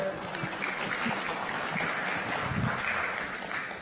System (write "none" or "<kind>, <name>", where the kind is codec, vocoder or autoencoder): none